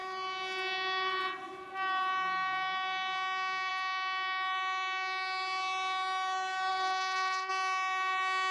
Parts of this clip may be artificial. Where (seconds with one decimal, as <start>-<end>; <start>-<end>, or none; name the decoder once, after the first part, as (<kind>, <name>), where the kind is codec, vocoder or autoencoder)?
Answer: 6.7-7.5 (codec, SNAC)